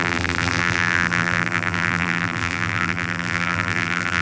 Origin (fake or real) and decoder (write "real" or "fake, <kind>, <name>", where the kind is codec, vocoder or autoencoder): fake, vocoder, BigVGAN v2